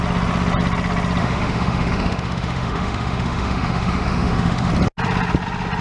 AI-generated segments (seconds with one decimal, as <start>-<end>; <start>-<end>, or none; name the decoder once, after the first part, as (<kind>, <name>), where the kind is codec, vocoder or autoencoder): 1.2-4.7 (autoencoder, DAC-VAE)